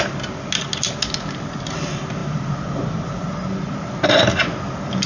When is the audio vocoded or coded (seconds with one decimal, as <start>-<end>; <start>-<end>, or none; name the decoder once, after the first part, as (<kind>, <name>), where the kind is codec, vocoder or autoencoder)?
none